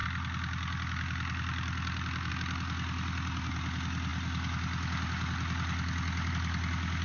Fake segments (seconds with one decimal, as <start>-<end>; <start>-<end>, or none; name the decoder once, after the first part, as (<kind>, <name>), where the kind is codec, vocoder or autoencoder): none